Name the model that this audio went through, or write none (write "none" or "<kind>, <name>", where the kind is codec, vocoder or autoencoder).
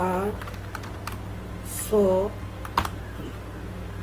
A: none